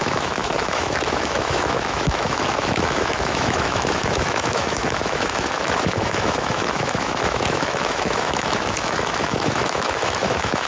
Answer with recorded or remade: remade